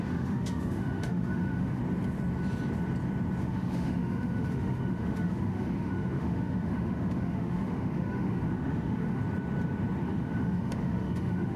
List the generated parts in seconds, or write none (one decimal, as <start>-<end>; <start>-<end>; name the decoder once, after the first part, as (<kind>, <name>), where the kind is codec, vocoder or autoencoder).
0.0-1.8 (autoencoder, DAC-VAE); 3.4-9.2; 10.0-11.6